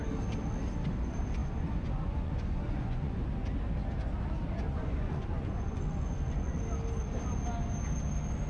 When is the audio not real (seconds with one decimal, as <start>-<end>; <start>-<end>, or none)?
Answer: 1.4-3.2; 4.7-6.6